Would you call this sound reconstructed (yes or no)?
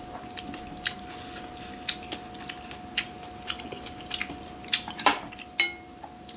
no